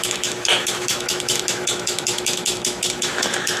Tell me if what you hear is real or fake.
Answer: fake